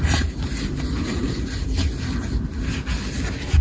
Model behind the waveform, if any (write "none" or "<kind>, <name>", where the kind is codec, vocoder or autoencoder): none